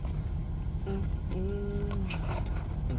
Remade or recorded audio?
recorded